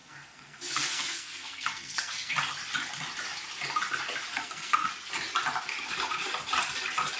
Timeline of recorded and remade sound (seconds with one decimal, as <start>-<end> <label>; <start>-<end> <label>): 0.0-2.3 remade; 2.3-4.3 recorded; 4.3-4.9 remade; 4.9-7.2 recorded